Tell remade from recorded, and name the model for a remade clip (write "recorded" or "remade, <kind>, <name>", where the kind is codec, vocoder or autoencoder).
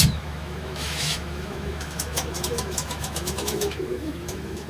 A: remade, autoencoder, DAC-VAE